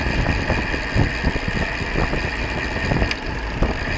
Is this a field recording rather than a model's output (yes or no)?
yes